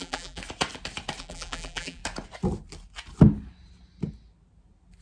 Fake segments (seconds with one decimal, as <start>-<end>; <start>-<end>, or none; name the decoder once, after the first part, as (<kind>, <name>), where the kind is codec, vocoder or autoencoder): 0.0-0.4 (vocoder, BigVGAN v2); 1.2-2.0